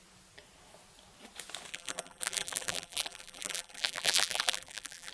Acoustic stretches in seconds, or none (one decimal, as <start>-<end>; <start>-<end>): 0.0-1.7

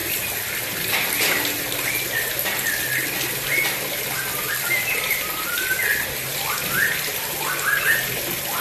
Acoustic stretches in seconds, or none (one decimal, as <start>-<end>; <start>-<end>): 0.0-8.6